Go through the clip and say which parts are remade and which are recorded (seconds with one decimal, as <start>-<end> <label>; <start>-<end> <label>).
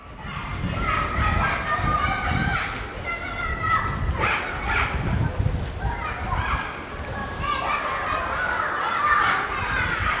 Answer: 0.0-10.2 recorded